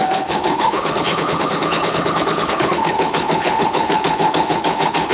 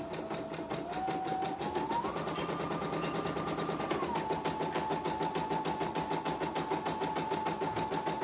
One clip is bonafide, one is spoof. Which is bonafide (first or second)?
second